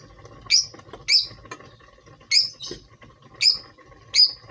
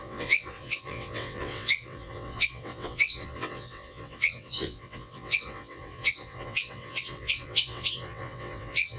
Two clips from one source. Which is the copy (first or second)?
second